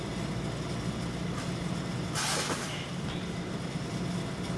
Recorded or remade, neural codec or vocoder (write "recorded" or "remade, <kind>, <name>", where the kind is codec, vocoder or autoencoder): recorded